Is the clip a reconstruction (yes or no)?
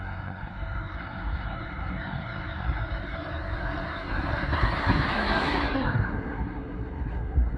yes